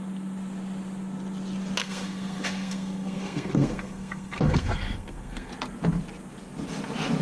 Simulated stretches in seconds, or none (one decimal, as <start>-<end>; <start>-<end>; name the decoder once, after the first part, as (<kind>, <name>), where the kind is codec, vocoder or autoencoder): 1.8-5.5 (codec, SNAC)